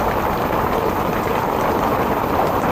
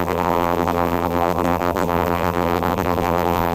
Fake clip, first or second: second